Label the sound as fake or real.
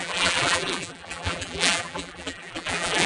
fake